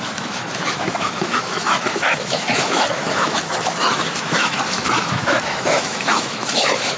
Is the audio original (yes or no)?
no